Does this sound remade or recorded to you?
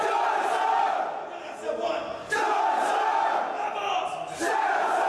recorded